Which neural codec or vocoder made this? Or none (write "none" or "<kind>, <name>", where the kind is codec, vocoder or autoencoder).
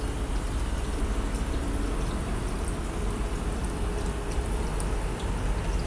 none